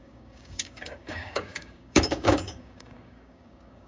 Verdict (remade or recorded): remade